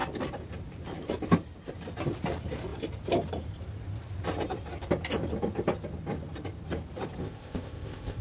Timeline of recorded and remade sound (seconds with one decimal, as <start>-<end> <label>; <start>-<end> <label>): 0.0-7.2 recorded; 7.2-8.2 remade